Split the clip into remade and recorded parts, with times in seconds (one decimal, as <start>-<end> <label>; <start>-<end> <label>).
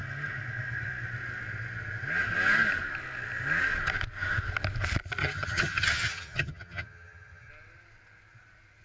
0.0-5.2 recorded; 5.2-7.5 remade; 7.5-8.8 recorded